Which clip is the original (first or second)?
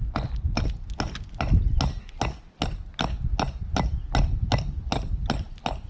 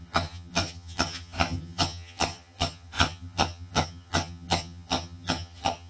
first